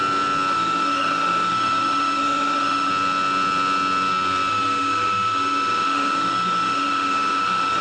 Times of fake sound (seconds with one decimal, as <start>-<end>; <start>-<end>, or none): 0.5-2.9; 4.5-7.8